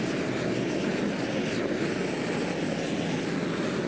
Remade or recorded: recorded